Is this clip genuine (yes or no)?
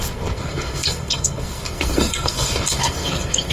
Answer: no